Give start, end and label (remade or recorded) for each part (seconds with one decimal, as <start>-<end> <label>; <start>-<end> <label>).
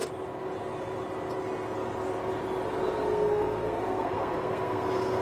0.0-3.1 recorded; 3.1-5.2 remade